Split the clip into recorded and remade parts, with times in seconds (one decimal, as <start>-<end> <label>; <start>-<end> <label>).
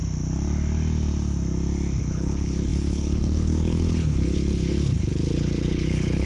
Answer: 0.0-2.0 recorded; 2.0-6.3 remade